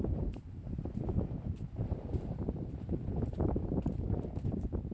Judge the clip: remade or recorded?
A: remade